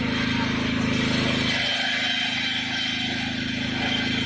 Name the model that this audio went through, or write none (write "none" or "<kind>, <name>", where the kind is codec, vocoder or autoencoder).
none